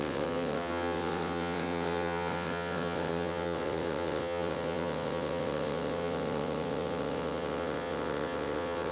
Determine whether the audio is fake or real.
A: fake